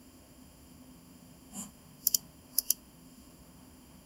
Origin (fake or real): fake